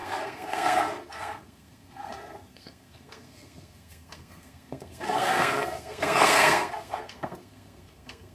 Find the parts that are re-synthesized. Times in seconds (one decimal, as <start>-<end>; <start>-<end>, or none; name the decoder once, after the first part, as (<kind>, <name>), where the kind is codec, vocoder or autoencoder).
0.0-8.3 (codec, SNAC)

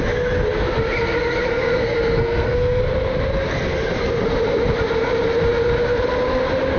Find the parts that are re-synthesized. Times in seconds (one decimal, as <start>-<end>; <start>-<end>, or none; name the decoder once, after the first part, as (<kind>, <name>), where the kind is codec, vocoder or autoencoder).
1.5-2.8 (codec, SNAC)

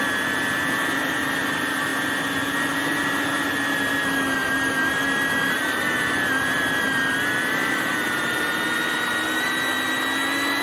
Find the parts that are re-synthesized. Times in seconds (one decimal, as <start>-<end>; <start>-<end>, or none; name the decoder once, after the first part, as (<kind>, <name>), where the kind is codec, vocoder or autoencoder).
none

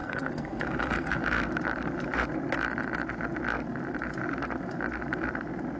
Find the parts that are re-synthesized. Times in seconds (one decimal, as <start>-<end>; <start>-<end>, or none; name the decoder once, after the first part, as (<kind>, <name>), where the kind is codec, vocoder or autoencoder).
0.0-1.2 (codec, SNAC)

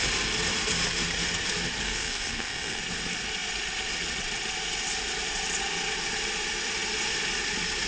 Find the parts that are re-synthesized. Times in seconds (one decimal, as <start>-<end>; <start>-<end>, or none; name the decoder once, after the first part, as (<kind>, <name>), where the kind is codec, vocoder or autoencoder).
1.8-2.8 (codec, SNAC)